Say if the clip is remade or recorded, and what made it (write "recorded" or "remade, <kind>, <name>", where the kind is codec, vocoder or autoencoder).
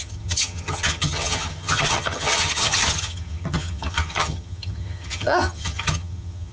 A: remade, vocoder, HiFi-GAN